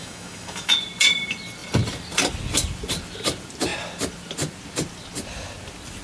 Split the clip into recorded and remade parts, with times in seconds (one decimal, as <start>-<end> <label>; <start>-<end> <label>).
0.0-0.7 remade; 0.7-6.0 recorded

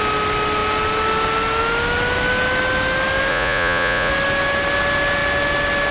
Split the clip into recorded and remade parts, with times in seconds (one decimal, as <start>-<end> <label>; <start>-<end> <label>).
0.0-3.3 recorded; 3.3-4.1 remade; 4.1-5.9 recorded

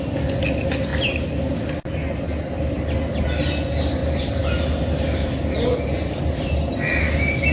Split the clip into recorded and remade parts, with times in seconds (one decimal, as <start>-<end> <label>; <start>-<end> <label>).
0.0-7.5 recorded

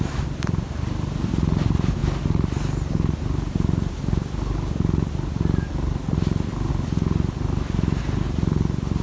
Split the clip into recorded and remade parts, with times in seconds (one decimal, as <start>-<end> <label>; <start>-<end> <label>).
0.0-9.0 recorded

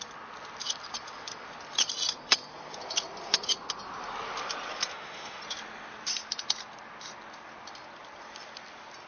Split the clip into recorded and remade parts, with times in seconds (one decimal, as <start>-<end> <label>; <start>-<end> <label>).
0.0-4.9 recorded; 4.9-5.4 remade; 5.4-9.1 recorded

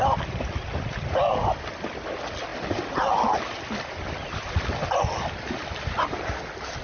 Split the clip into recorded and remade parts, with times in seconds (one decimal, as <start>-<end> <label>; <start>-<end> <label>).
0.0-6.8 recorded

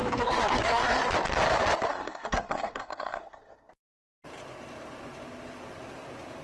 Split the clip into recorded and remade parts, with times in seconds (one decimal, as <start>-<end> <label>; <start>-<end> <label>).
0.0-1.1 remade; 1.1-1.9 recorded; 1.9-3.7 remade; 3.7-6.4 recorded

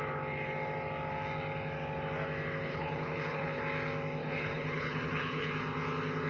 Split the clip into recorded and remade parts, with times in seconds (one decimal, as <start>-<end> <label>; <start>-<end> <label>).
0.0-2.7 recorded; 2.7-3.6 remade; 3.6-4.2 recorded; 4.2-5.5 remade; 5.5-6.3 recorded